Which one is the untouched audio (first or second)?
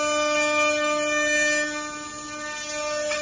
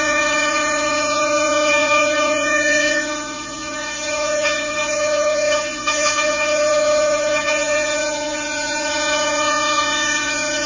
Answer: first